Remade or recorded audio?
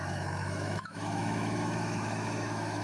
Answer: remade